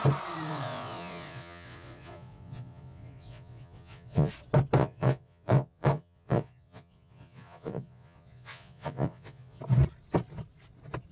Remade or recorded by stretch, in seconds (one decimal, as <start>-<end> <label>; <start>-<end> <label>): 0.0-0.5 recorded; 0.5-4.3 remade; 4.3-4.8 recorded; 4.8-9.6 remade; 9.6-11.1 recorded